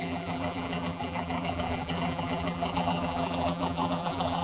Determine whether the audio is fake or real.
fake